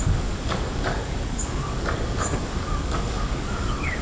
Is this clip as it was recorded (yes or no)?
no